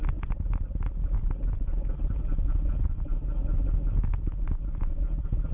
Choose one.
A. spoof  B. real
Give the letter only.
B